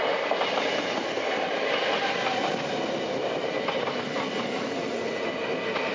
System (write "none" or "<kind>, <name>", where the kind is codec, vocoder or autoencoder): none